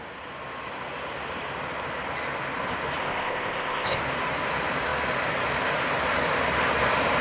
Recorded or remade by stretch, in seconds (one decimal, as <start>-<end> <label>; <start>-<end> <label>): 0.0-3.0 recorded; 3.0-4.0 remade; 4.0-7.2 recorded